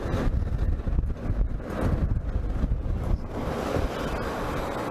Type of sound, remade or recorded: recorded